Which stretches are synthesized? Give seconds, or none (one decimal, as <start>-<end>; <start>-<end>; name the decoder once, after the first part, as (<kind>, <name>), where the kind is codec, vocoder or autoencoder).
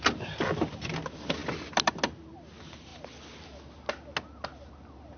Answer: none